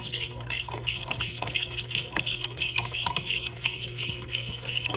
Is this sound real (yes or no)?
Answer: no